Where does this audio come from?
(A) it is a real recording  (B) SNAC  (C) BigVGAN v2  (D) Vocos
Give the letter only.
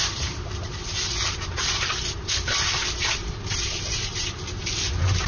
C